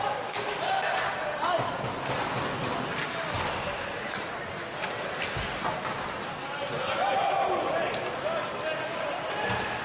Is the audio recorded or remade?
recorded